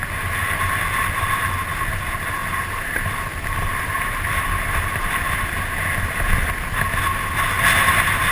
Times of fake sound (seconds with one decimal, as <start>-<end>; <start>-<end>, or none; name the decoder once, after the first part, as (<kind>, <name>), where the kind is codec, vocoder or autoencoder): none